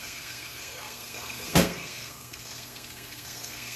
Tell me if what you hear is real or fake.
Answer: fake